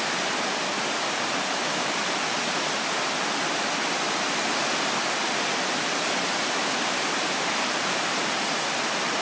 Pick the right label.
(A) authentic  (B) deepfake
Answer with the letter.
B